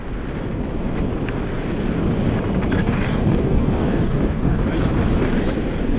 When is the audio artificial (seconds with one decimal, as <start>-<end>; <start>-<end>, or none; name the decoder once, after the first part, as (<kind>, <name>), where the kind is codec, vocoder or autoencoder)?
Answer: 2.8-4.6 (codec, DAC)